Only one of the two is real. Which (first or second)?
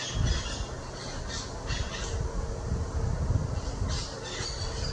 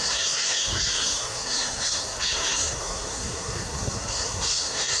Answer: first